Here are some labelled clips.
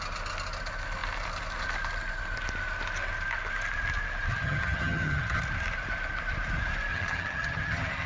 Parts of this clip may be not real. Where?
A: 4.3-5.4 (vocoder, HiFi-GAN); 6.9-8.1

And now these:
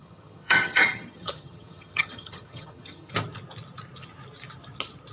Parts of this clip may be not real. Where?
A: 0.0-3.1 (vocoder, HiFi-GAN)

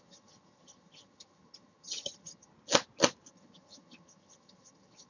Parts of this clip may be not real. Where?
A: 0.0-2.5 (vocoder, HiFi-GAN); 3.3-5.1